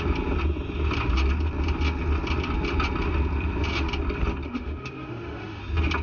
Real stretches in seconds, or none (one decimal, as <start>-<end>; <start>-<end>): 0.0-4.5; 5.6-6.0

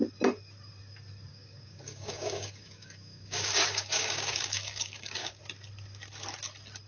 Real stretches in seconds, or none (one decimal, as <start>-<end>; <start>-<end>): 0.0-1.3; 5.4-6.9

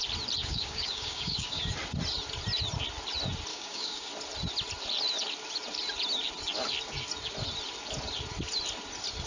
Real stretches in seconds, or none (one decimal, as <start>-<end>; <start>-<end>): 0.0-0.4; 1.6-3.5; 4.1-9.3

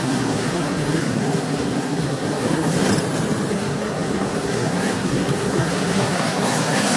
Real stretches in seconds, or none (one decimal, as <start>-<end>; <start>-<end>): 2.9-3.5

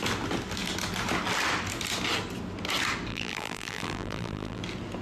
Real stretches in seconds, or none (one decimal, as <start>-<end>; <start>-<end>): 0.0-3.1; 4.6-5.0